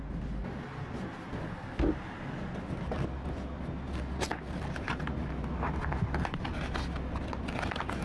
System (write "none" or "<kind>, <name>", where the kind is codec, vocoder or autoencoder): none